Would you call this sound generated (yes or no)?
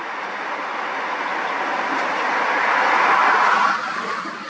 no